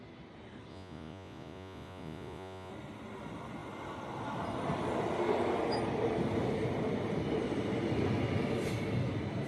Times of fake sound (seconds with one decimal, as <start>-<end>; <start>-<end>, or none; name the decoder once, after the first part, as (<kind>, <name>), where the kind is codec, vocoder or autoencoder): 0.7-2.7 (vocoder, Vocos)